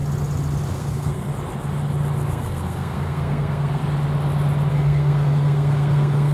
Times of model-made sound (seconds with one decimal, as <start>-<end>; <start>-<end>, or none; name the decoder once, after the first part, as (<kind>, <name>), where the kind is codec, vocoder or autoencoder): 0.7-1.3 (codec, SNAC); 2.3-3.8; 4.7-6.3